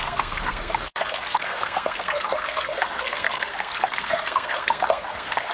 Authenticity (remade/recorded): remade